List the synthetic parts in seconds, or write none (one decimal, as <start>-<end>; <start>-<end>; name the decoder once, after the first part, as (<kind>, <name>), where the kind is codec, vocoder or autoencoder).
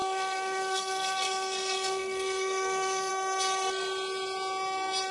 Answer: 0.0-3.1 (codec, SNAC)